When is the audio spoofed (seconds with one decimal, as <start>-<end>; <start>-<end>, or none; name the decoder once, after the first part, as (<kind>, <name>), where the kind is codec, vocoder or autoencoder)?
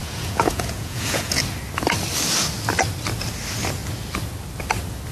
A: 0.0-1.4 (vocoder, Vocos)